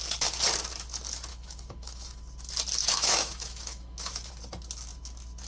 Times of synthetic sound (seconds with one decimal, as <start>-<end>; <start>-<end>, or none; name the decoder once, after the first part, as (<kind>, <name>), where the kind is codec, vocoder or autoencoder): 1.3-2.2 (autoencoder, DAC-VAE); 2.8-4.3